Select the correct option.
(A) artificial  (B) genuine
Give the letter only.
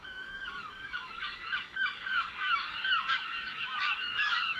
A